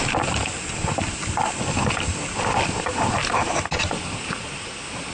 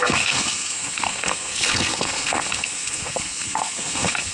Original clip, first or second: first